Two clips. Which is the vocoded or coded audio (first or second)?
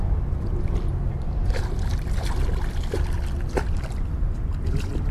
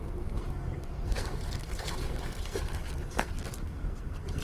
second